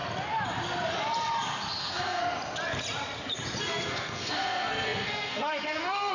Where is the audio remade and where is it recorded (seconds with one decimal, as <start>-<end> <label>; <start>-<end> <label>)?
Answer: 0.0-1.8 recorded; 1.8-2.2 remade; 2.2-3.6 recorded; 3.6-6.1 remade